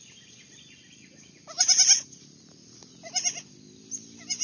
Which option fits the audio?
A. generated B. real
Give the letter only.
A